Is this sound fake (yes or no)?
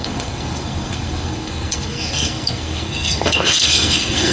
yes